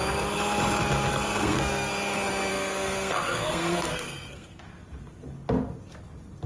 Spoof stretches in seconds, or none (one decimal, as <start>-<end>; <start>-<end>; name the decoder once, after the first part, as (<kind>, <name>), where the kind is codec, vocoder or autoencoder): 1.1-1.9 (codec, SNAC); 2.5-4.6